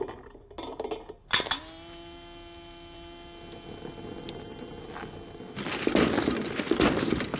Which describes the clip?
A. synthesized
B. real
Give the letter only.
B